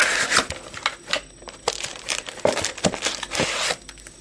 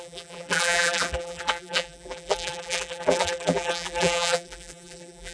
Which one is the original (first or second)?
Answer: first